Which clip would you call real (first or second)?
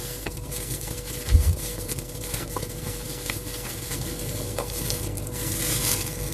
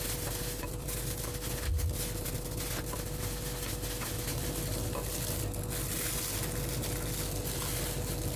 second